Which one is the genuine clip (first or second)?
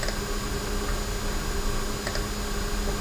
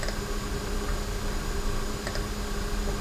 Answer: first